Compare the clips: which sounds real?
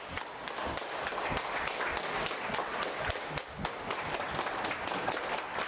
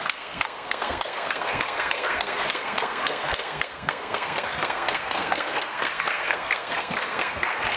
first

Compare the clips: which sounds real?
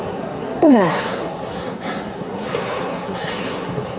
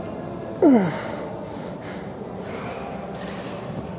second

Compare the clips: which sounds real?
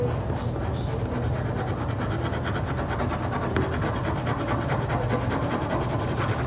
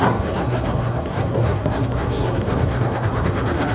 first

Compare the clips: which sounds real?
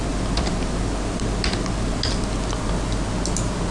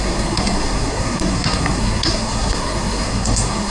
first